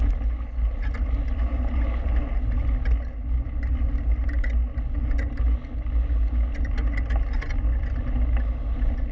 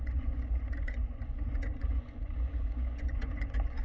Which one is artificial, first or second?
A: second